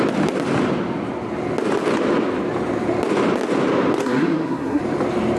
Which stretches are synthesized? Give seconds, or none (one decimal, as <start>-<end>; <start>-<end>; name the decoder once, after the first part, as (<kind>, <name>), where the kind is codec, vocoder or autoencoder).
4.0-4.8 (codec, SNAC)